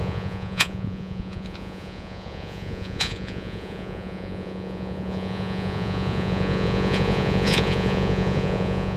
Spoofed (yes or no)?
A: yes